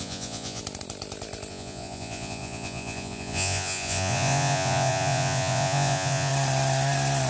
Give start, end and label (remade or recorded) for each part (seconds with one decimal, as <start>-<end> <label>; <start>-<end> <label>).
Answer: 0.0-0.6 remade; 0.6-1.5 recorded; 1.5-6.3 remade; 6.3-7.3 recorded

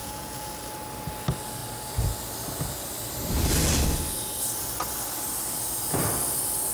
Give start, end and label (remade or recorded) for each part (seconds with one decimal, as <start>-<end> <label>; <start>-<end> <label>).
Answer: 0.0-0.5 remade; 0.5-6.7 recorded

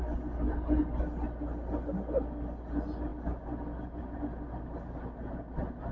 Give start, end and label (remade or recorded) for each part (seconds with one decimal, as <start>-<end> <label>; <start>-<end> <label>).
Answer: 0.0-5.9 recorded

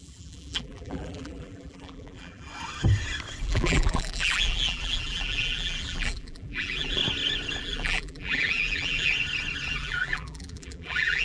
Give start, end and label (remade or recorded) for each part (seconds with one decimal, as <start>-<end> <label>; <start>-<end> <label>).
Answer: 0.0-2.5 remade; 2.5-3.4 recorded; 3.4-7.0 remade; 7.0-7.6 recorded; 7.6-9.1 remade; 9.1-9.7 recorded; 9.7-11.2 remade

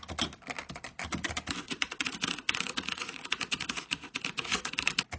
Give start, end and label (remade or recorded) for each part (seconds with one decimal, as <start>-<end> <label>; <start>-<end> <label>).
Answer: 0.0-1.6 recorded; 1.6-4.7 remade; 4.7-5.2 recorded

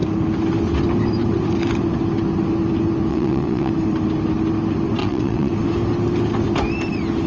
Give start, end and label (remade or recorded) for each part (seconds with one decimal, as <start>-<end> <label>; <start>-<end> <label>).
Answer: 0.0-3.1 recorded; 3.1-3.7 remade; 3.7-5.0 recorded; 5.0-5.5 remade; 5.5-7.3 recorded

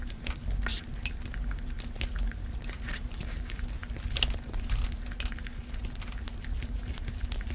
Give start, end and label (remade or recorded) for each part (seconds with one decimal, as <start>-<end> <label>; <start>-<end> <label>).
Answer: 0.0-7.5 recorded